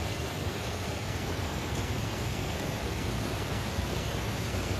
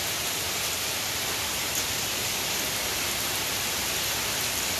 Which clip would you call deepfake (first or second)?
first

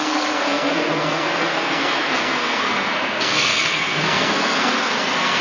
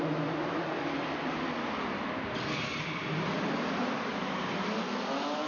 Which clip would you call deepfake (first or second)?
first